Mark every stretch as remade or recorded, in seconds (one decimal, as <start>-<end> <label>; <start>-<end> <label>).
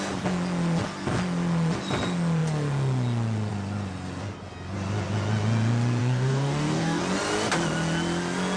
0.0-6.0 recorded; 6.0-7.0 remade; 7.0-8.6 recorded